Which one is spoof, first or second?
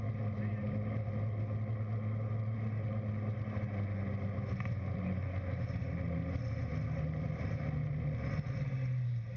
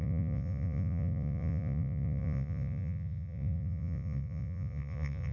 second